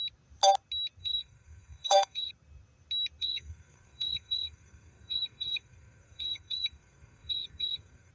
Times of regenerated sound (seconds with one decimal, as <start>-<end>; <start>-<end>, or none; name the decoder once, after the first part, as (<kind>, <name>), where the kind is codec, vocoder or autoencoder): 1.0-2.3 (codec, SNAC); 3.2-8.1